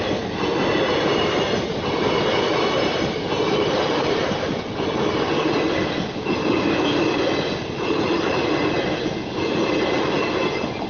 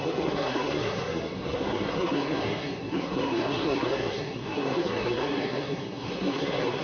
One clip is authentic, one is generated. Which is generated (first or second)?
second